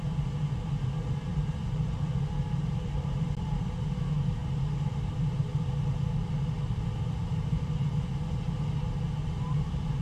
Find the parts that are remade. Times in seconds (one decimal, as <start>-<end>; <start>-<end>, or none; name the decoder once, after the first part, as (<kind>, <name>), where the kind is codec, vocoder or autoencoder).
none